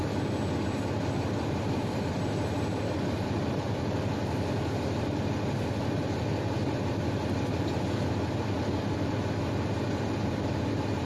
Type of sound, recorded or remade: recorded